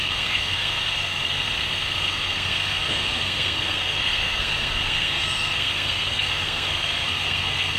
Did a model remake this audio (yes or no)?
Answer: yes